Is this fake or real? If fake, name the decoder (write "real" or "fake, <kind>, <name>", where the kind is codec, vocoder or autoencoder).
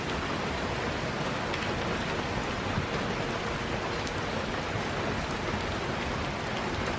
real